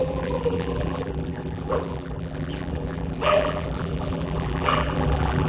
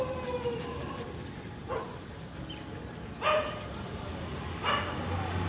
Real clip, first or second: second